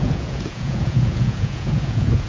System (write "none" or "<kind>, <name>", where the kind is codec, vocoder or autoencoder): vocoder, Vocos